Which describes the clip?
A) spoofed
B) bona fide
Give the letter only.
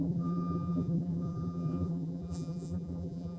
A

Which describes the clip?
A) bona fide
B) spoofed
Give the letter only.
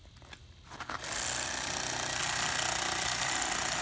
A